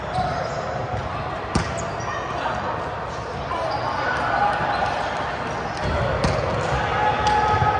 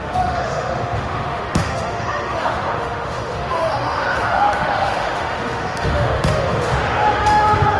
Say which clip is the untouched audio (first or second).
first